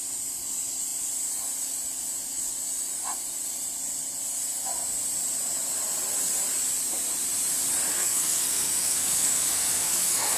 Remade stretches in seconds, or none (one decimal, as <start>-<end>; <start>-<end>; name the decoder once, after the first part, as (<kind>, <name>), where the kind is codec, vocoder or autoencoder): 7.9-10.4 (codec, SNAC)